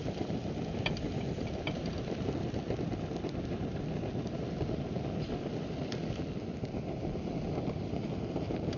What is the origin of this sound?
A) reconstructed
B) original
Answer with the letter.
B